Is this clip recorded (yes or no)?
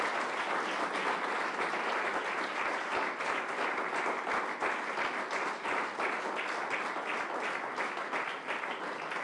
yes